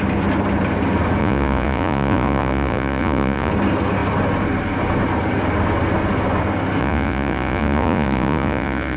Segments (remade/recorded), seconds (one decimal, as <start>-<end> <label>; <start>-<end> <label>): 0.0-1.2 recorded; 1.2-3.5 remade; 3.5-6.8 recorded; 6.8-9.0 remade